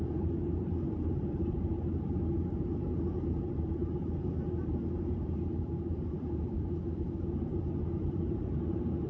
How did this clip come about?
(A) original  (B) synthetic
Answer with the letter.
B